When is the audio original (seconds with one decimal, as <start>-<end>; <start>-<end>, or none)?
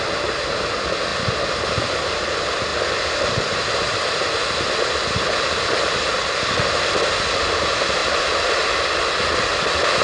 0.0-10.0